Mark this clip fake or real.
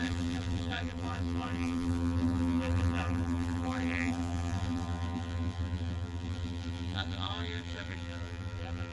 fake